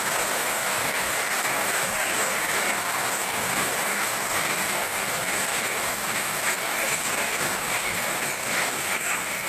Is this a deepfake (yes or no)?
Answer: yes